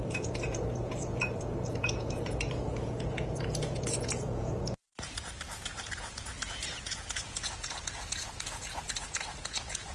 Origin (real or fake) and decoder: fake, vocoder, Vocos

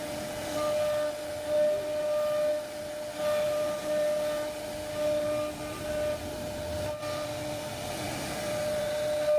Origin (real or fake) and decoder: real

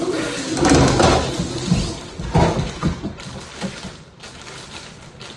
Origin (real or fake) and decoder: real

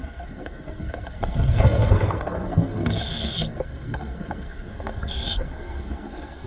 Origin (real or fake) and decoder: fake, codec, SNAC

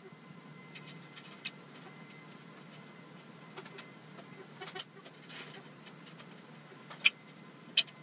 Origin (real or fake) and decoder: real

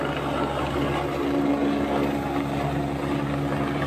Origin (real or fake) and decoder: real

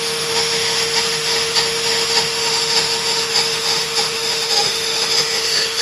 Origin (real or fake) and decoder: fake, autoencoder, DAC-VAE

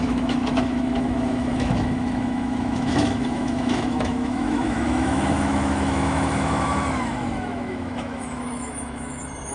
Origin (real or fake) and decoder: fake, autoencoder, DAC-VAE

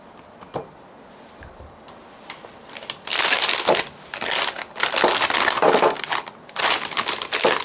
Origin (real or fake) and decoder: real